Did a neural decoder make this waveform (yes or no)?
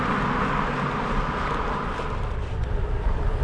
no